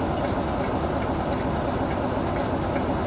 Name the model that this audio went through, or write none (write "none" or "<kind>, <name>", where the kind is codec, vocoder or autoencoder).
none